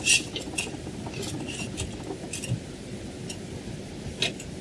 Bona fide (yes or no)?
yes